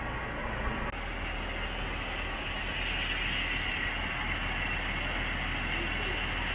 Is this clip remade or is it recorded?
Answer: recorded